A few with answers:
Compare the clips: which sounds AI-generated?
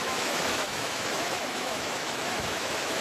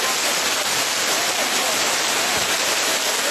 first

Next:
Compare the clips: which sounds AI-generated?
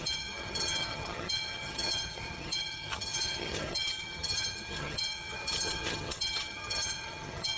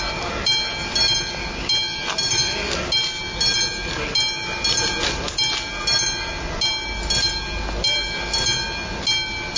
first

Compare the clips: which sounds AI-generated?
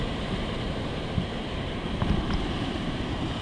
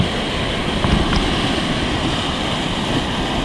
first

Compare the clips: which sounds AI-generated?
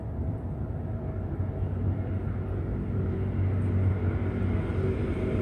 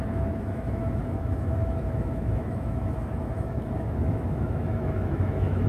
second